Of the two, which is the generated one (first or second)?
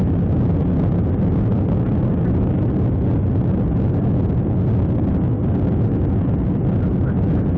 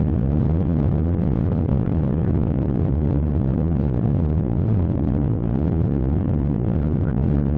second